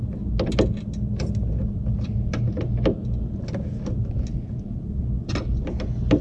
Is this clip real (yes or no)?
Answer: yes